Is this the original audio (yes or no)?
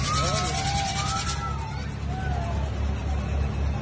yes